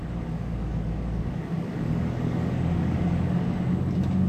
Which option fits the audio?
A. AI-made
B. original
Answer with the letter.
A